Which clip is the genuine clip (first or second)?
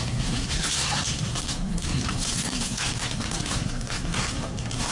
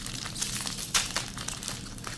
second